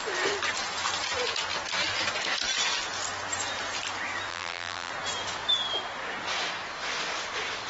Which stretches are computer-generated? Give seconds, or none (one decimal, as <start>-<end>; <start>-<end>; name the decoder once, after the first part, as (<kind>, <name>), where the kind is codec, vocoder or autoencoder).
4.3-4.9 (vocoder, BigVGAN v2)